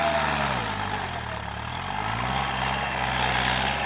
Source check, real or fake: real